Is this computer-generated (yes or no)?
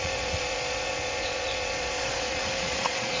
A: yes